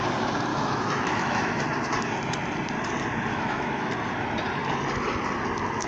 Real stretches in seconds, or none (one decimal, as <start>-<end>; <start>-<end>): 0.0-0.5; 1.6-3.3; 3.9-5.9